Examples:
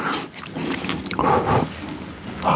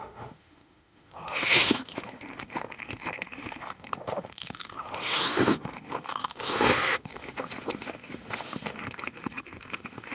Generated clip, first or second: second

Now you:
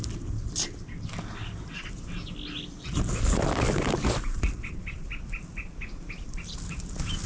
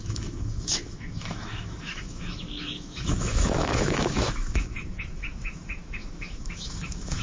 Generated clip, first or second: second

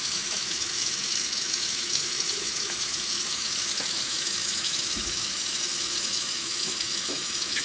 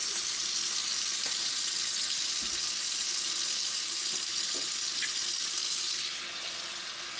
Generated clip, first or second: first